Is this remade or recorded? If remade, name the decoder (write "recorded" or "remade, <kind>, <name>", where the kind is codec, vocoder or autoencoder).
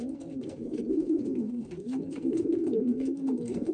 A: remade, codec, SNAC